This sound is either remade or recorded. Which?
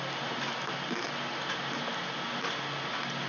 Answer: recorded